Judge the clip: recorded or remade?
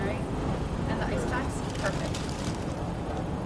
recorded